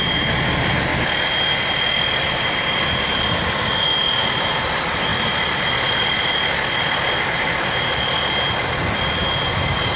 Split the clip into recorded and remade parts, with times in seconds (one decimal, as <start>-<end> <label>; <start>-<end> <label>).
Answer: 0.0-0.9 remade; 0.9-3.4 recorded; 3.4-5.1 remade; 5.1-5.9 recorded; 5.9-10.0 remade